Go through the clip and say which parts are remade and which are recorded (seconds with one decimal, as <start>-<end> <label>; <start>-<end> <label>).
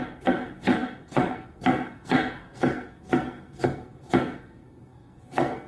0.0-5.7 remade